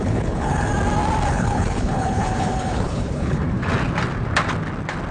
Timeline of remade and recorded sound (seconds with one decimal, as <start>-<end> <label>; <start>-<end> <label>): 0.0-0.7 remade; 0.7-1.3 recorded; 1.3-3.4 remade; 3.4-5.1 recorded